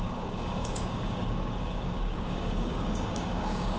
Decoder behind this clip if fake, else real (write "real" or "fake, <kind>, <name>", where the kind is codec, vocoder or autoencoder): fake, codec, DAC